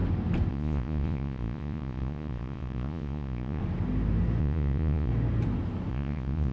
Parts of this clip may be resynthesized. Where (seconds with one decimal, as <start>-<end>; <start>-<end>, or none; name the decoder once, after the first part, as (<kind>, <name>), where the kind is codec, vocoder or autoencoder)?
0.5-3.6 (vocoder, Vocos); 4.4-5.1; 5.9-6.5